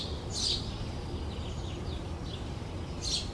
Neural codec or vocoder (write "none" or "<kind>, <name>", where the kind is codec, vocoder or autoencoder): none